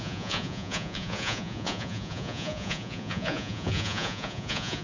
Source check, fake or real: fake